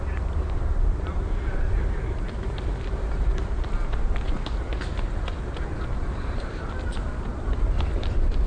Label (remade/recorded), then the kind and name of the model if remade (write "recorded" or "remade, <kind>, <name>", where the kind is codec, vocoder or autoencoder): remade, vocoder, BigVGAN v2